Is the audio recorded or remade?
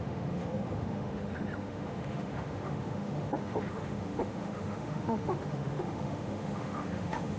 remade